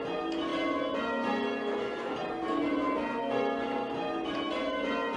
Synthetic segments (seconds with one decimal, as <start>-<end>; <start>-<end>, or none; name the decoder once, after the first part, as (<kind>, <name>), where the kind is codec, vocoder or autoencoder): none